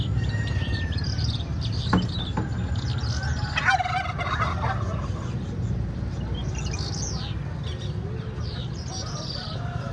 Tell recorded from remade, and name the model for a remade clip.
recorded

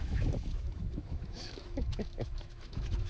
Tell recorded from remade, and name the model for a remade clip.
remade, autoencoder, DAC-VAE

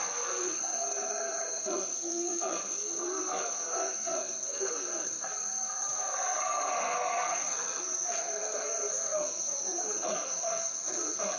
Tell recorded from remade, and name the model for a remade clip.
remade, codec, SNAC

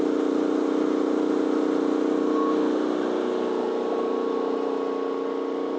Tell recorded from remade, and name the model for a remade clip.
recorded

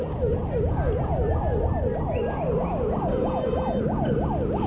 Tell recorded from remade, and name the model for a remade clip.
recorded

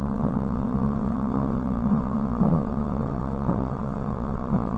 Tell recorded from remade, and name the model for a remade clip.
remade, vocoder, WaveNeXt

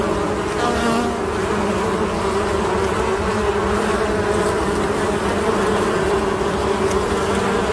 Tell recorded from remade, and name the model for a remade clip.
recorded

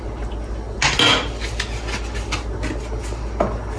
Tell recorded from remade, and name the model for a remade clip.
recorded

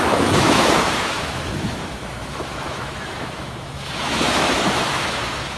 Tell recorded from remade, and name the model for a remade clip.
remade, autoencoder, DAC-VAE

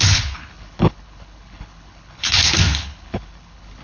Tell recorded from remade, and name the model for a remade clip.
remade, codec, HILCodec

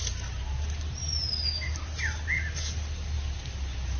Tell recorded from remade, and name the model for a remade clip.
recorded